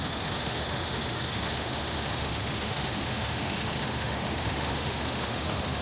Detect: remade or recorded remade